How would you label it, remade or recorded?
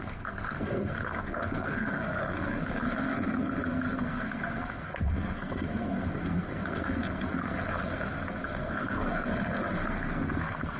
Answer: remade